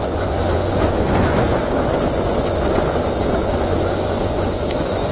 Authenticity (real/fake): fake